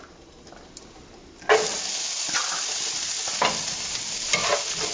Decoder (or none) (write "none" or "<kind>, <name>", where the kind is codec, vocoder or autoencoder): none